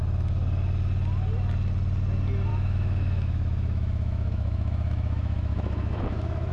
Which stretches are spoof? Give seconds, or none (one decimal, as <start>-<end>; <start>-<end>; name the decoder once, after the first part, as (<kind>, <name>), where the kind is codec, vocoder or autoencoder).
2.5-6.5 (autoencoder, DAC-VAE)